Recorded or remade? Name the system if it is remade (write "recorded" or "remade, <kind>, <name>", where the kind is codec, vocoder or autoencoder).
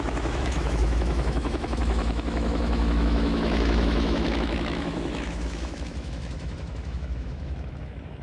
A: remade, autoencoder, DAC-VAE